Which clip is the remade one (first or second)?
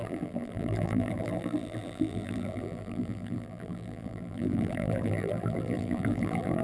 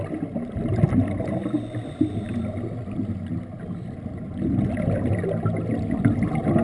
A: first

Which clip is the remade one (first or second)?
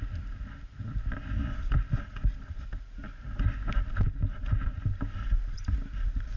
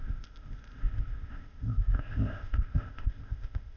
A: second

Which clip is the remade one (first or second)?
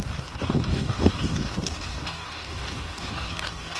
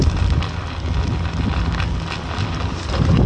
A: first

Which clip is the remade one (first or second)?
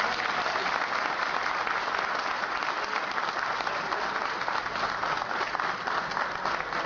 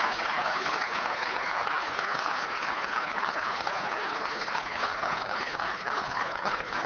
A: second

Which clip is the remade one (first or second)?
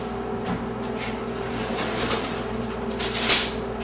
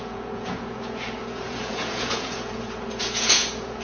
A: second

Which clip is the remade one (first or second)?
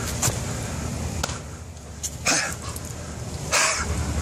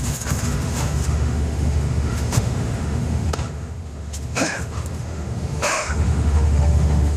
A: second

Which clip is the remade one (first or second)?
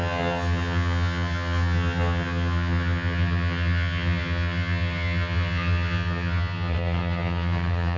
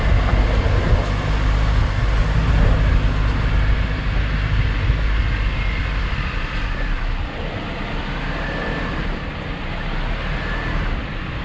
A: first